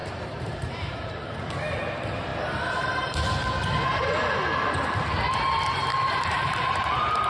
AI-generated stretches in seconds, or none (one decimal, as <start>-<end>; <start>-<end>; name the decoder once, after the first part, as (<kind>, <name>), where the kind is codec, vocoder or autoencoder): 0.0-1.4 (vocoder, BigVGAN v2); 5.9-7.3